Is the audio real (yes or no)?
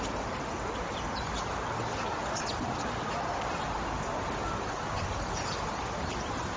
yes